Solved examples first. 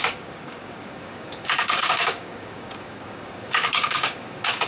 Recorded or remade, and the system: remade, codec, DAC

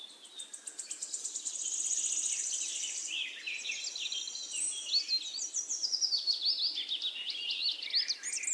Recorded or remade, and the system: recorded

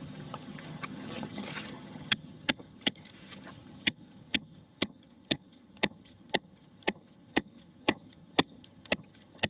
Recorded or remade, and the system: remade, vocoder, HiFi-GAN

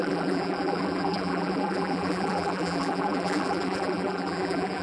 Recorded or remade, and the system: remade, vocoder, BigVGAN v2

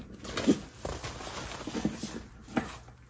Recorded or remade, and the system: recorded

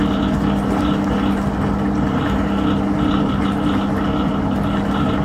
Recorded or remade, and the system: recorded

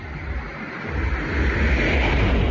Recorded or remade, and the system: recorded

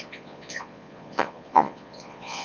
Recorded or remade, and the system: remade, vocoder, Vocos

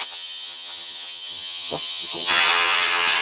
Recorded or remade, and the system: remade, vocoder, HiFi-GAN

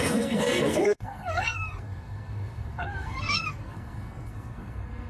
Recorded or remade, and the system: remade, codec, SNAC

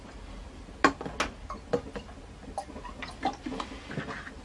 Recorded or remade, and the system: recorded